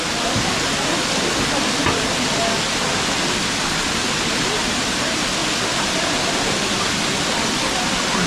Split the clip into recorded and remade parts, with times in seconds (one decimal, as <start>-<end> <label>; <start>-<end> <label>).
0.0-8.3 recorded